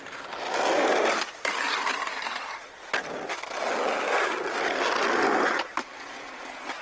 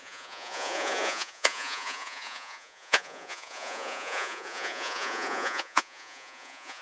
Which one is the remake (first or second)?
second